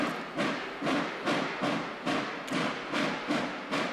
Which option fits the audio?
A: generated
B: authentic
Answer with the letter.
B